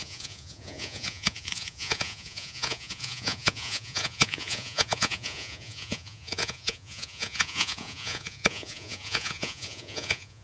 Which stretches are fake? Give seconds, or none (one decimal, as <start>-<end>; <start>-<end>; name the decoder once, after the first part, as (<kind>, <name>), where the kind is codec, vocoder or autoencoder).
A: 0.0-10.4 (vocoder, Vocos)